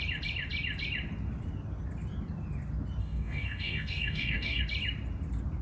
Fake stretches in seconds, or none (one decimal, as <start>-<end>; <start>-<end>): 3.0-4.6